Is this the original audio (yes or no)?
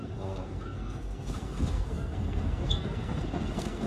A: no